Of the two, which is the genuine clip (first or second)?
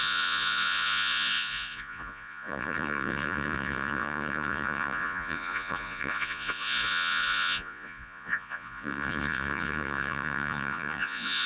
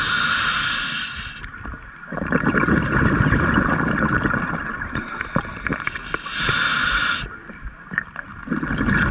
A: second